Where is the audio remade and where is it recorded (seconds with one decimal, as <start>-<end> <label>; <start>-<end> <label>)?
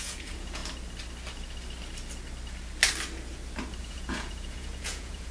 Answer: 0.0-0.6 remade; 0.6-3.8 recorded; 3.8-5.3 remade